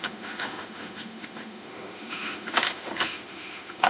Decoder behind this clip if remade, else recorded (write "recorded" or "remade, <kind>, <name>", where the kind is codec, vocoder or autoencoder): remade, autoencoder, DAC-VAE